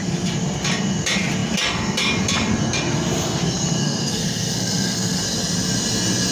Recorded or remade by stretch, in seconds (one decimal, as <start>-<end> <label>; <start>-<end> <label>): 0.0-3.8 recorded; 3.8-5.2 remade; 5.2-6.3 recorded